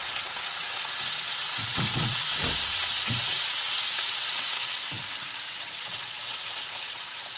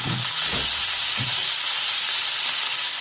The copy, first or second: first